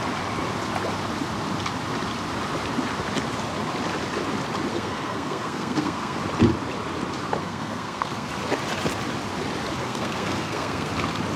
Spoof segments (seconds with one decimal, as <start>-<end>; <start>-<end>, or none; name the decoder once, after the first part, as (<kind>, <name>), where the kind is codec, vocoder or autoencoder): 4.7-6.2 (codec, SNAC); 7.4-8.3; 9.8-10.9